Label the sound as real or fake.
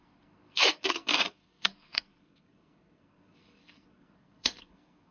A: fake